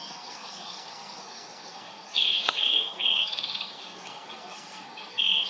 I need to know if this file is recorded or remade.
remade